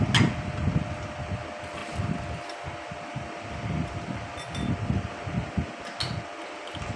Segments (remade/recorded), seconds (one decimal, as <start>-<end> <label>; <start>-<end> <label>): 0.0-7.0 recorded